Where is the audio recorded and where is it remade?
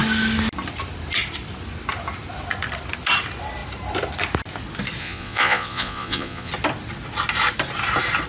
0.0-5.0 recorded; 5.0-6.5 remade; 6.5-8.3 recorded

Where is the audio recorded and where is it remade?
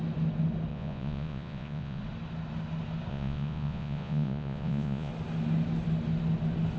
0.0-0.7 recorded; 0.7-2.0 remade; 2.0-3.1 recorded; 3.1-5.1 remade; 5.1-6.8 recorded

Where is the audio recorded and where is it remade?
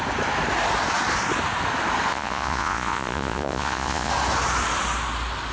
0.0-2.1 recorded; 2.1-4.1 remade; 4.1-5.5 recorded